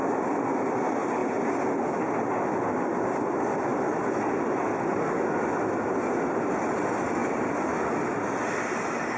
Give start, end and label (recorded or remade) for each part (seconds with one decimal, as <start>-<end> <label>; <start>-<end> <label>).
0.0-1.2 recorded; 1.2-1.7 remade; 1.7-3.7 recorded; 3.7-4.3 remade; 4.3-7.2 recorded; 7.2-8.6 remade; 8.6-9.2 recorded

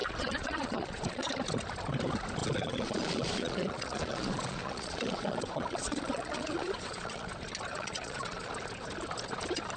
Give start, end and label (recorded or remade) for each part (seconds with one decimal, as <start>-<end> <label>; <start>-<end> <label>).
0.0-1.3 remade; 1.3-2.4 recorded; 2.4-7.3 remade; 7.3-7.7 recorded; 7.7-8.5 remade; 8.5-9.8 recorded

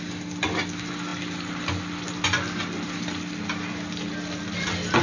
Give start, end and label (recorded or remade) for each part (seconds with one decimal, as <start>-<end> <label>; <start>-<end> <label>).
0.0-5.0 recorded

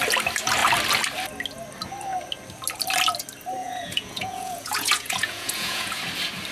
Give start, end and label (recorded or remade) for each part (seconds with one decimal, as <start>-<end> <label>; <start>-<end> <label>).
0.0-3.6 recorded; 3.6-6.0 remade; 6.0-6.5 recorded